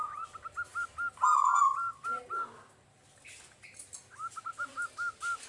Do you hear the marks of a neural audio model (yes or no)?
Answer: no